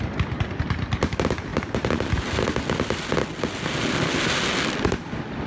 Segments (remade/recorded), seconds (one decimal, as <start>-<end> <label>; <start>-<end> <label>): 0.0-5.5 recorded

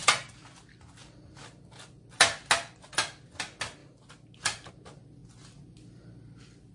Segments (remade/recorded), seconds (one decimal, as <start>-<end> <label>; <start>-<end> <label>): 0.0-6.7 recorded

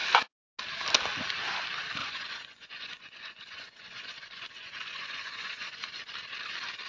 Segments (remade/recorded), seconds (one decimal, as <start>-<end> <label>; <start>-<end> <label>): 0.0-2.0 recorded; 2.0-6.1 remade; 6.1-6.9 recorded